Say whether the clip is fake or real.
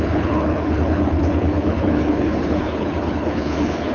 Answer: fake